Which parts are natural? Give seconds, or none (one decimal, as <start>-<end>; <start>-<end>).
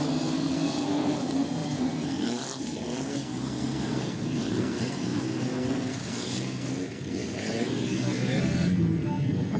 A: none